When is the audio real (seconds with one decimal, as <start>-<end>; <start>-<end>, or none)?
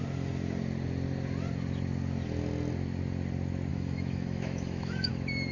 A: 0.0-3.7; 5.1-5.5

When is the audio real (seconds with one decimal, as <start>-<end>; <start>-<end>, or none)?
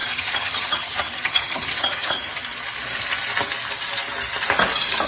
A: 2.4-5.1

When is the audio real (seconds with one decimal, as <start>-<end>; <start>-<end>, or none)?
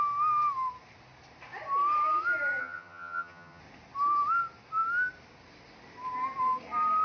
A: 0.0-2.6; 3.6-7.0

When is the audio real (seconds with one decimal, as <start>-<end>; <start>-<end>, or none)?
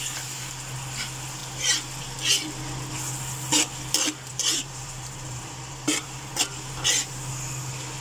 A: 0.0-4.3; 6.3-8.0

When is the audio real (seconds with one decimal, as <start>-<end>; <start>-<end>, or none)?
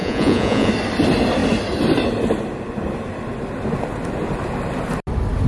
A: 0.7-5.5